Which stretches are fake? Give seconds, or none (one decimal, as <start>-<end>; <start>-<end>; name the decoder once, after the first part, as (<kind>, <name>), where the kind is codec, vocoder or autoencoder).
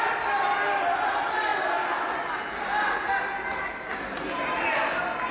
none